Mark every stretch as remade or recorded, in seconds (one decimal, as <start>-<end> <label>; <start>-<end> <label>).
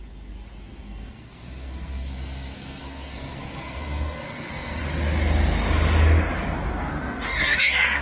0.0-4.8 remade; 4.8-6.7 recorded; 6.7-8.0 remade